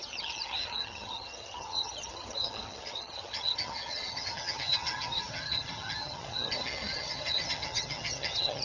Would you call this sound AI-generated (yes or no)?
yes